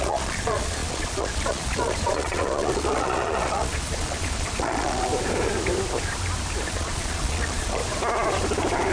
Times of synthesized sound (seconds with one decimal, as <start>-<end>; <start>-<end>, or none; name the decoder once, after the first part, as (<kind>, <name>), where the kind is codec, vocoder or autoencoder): 0.0-5.1 (vocoder, Vocos); 6.7-7.8